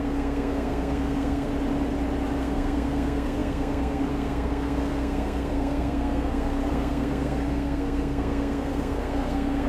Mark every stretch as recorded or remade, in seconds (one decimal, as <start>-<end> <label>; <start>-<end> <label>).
0.0-1.5 remade; 1.5-2.4 recorded; 2.4-9.7 remade